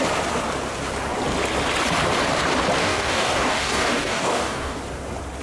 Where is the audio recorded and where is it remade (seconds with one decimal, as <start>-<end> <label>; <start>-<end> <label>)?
0.0-2.8 recorded; 2.8-4.8 remade; 4.8-5.4 recorded